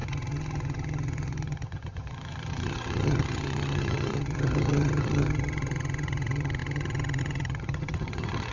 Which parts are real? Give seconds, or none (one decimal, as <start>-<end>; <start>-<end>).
none